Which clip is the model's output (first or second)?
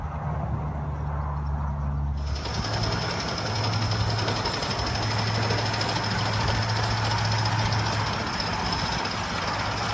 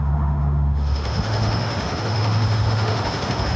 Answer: second